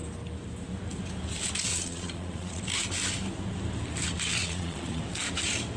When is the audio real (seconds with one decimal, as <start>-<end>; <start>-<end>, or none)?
0.0-1.7; 2.6-4.4; 5.0-5.8

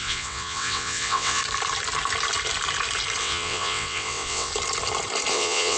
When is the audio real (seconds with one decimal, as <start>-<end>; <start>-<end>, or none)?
1.4-3.2; 4.5-5.3

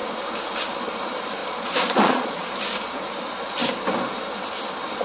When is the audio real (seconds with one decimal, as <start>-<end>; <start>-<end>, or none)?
0.0-1.4; 2.5-5.0

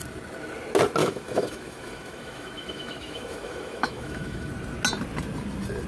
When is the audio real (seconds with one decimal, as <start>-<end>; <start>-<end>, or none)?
0.0-1.0; 4.5-5.9

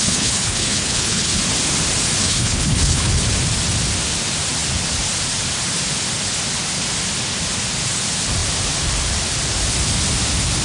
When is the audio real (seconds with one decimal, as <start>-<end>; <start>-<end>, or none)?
1.4-2.2; 3.1-10.6

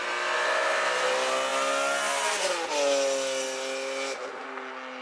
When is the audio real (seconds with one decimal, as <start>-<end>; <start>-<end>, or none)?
0.0-5.0

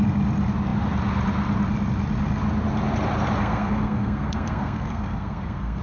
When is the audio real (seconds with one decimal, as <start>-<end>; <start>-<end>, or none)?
0.0-3.4